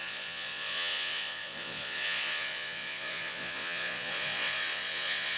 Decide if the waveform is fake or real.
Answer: fake